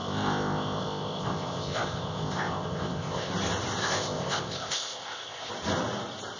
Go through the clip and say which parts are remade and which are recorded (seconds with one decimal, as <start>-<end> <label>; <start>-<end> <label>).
0.0-3.3 remade; 3.3-3.8 recorded; 3.8-5.5 remade; 5.5-6.4 recorded